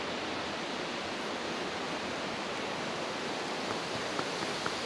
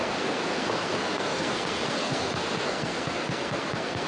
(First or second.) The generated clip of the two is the second